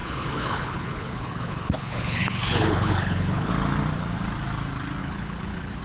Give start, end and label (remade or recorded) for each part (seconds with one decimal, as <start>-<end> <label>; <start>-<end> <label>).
0.0-3.5 remade; 3.5-5.0 recorded; 5.0-5.8 remade